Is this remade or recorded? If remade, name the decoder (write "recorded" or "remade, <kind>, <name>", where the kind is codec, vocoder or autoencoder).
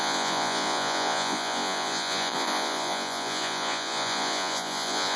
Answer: remade, vocoder, Vocos